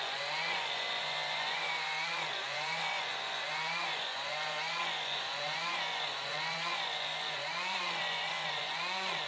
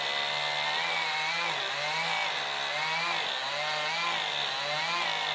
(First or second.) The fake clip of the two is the first